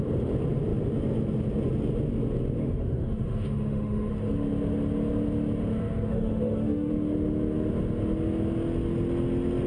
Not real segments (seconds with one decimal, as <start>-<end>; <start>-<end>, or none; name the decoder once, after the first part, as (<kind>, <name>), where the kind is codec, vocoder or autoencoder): 2.6-4.1 (autoencoder, DAC-VAE); 6.1-6.9